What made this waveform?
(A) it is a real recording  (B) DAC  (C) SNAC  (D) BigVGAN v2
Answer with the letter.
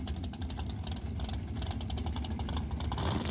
D